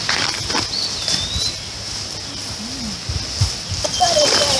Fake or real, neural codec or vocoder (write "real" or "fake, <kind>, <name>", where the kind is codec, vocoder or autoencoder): real